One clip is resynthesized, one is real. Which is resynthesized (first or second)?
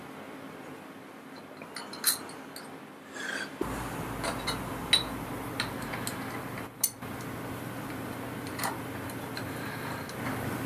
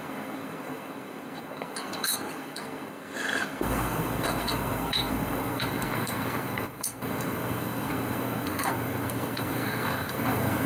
second